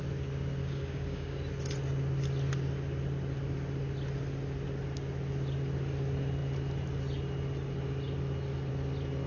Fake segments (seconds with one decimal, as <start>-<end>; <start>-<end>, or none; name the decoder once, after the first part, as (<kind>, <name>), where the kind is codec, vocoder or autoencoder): 0.6-1.4 (codec, DAC)